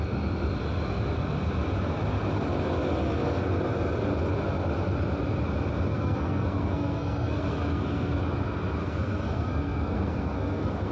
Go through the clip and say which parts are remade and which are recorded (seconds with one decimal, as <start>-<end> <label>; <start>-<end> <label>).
0.0-5.9 recorded; 5.9-8.2 remade; 8.2-8.8 recorded; 8.8-10.9 remade